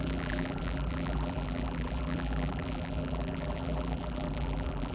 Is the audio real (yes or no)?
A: no